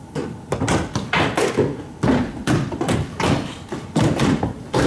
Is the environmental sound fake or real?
fake